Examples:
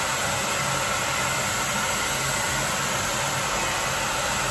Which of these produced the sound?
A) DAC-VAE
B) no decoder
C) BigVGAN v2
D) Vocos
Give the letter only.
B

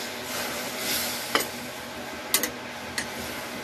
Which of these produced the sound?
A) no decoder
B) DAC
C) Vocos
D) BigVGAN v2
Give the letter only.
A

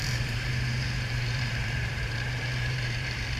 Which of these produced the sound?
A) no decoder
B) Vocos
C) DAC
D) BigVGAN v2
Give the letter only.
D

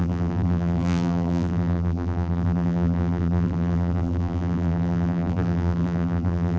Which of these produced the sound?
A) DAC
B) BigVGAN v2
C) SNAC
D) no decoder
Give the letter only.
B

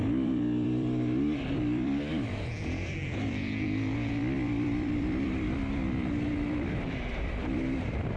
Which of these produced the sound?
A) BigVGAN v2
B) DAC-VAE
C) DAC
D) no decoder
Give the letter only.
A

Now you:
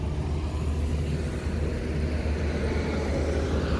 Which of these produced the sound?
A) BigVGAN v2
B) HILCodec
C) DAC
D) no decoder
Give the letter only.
D